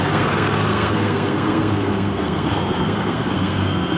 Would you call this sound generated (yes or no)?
yes